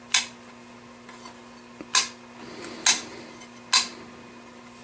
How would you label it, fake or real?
real